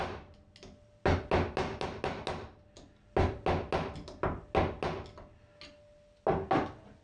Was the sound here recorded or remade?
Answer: recorded